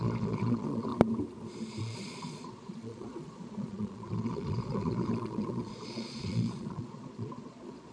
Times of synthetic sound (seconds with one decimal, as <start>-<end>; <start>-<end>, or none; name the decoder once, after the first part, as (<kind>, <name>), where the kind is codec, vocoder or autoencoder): 0.0-0.9 (vocoder, Vocos); 1.8-7.9